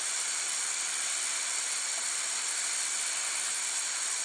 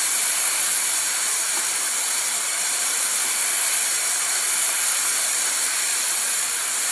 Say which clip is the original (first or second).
first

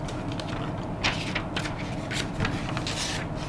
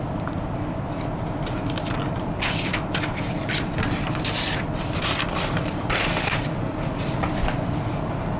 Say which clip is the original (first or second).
first